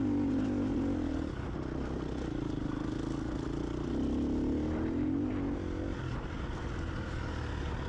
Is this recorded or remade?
recorded